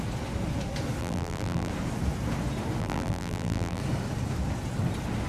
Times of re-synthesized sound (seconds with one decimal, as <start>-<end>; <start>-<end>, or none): 1.0-1.7; 2.8-3.8

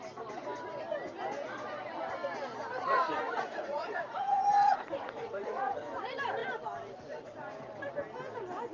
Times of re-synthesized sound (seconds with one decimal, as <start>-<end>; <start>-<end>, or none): 2.7-5.8

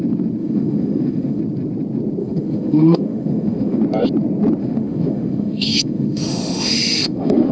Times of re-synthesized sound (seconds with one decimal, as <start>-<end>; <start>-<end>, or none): 0.4-1.4; 2.2-3.8; 4.6-7.5

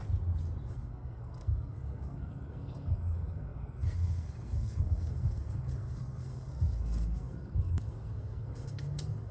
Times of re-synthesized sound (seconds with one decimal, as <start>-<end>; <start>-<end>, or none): 0.7-9.3